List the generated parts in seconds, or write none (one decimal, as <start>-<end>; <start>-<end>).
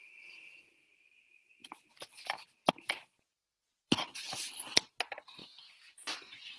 5.4-6.6